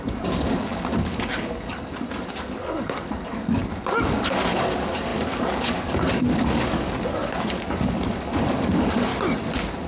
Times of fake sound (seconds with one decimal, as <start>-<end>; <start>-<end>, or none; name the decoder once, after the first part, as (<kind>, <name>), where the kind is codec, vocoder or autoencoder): 0.0-3.6 (codec, DAC); 4.3-9.1

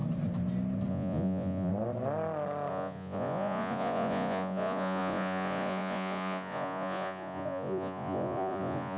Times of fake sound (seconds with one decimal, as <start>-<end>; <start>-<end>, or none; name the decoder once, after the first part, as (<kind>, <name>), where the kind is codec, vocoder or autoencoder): 0.9-1.7 (vocoder, Vocos); 2.7-9.0

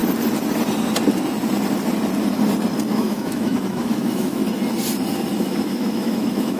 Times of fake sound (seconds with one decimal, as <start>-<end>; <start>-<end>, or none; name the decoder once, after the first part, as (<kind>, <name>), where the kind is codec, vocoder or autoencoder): 2.9-4.4 (autoencoder, DAC-VAE); 5.4-6.6

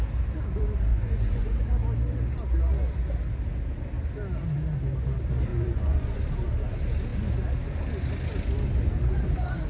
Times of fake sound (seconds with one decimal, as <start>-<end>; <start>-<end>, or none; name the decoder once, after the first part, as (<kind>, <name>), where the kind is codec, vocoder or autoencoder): 0.9-1.7 (vocoder, Vocos); 5.5-6.2

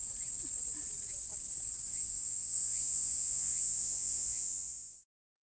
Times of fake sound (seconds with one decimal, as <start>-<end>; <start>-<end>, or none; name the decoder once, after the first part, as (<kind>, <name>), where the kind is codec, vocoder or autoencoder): 1.9-5.4 (vocoder, Vocos)

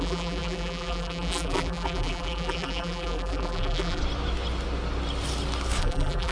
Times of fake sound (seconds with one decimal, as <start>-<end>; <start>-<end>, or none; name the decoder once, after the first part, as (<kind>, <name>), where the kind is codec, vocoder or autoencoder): 0.0-4.0 (vocoder, BigVGAN v2); 5.8-6.3

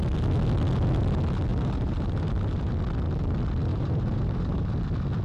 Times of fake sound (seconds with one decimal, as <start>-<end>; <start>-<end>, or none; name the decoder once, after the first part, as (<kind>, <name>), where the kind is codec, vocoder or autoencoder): 1.5-2.7 (vocoder, BigVGAN v2); 3.7-4.6